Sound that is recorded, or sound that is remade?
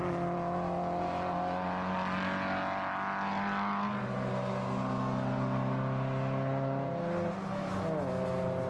recorded